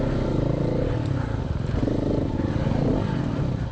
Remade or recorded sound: recorded